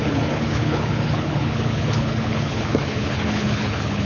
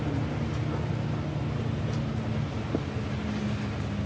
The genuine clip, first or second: second